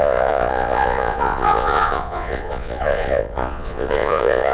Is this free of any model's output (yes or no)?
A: no